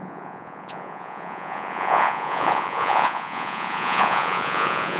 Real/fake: fake